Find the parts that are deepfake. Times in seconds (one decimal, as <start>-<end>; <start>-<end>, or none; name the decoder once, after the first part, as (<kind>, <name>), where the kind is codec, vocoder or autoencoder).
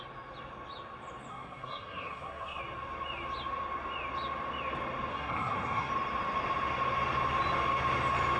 1.3-2.6 (codec, SNAC); 5.1-5.9